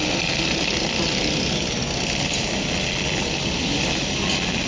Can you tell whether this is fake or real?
real